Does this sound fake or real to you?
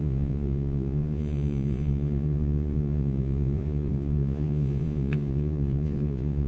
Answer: fake